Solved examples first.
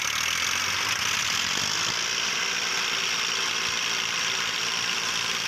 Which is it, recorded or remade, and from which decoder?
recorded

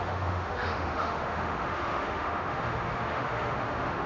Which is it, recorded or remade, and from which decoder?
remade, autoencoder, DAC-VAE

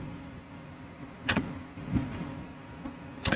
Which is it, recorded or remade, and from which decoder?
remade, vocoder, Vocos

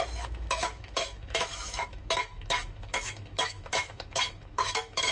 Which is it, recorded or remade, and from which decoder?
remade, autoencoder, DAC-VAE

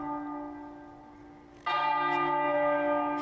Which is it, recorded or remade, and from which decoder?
recorded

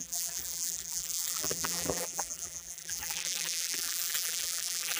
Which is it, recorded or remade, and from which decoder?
remade, vocoder, BigVGAN v2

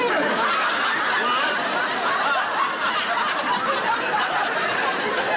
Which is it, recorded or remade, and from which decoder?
recorded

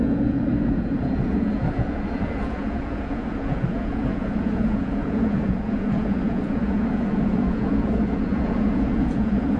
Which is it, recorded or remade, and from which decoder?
remade, vocoder, Vocos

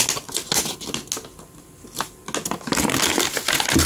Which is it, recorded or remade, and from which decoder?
recorded